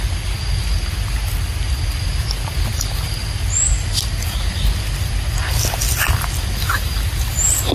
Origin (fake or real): real